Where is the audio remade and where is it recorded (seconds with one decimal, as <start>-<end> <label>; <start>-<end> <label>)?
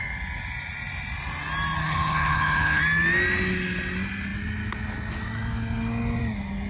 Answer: 0.0-1.8 recorded; 1.8-2.8 remade; 2.8-6.7 recorded